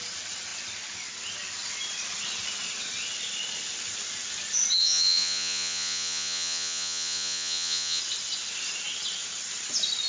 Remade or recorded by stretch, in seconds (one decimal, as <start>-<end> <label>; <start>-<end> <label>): 0.0-4.8 recorded; 4.8-8.0 remade; 8.0-10.1 recorded